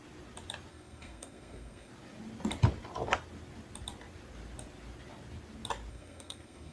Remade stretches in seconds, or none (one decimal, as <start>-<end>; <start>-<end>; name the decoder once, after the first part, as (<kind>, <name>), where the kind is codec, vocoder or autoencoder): 0.7-1.9 (codec, SNAC); 5.9-6.7